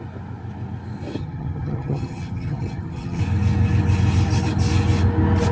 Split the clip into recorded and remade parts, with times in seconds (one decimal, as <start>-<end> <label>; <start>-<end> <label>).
0.0-1.2 recorded; 1.2-3.2 remade; 3.2-5.5 recorded